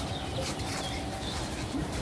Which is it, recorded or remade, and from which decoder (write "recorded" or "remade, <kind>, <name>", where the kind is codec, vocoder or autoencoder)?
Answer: recorded